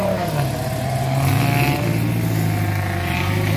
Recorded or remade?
recorded